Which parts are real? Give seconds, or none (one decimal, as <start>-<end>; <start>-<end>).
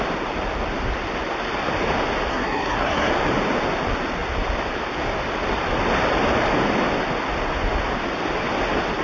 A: 0.0-2.3; 3.1-9.0